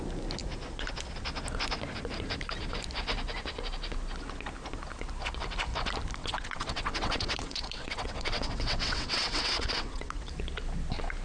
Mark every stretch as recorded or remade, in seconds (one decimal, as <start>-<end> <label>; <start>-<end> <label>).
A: 0.0-6.2 recorded; 6.2-10.3 remade; 10.3-11.2 recorded